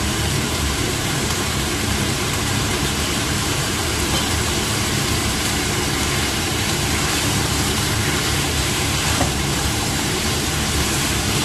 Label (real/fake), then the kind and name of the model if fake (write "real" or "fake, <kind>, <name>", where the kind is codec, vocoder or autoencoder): fake, vocoder, BigVGAN v2